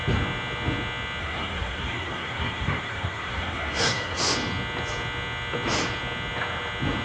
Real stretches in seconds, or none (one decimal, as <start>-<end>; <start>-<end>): 0.0-1.2; 4.2-7.0